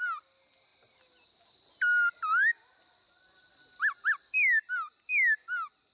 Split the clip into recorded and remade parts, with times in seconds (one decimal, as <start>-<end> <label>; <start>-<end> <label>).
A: 0.0-5.9 recorded